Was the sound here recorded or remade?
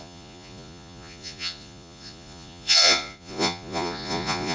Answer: remade